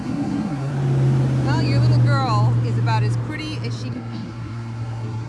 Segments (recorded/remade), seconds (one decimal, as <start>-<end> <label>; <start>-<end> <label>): 0.0-0.7 remade; 0.7-3.9 recorded; 3.9-5.3 remade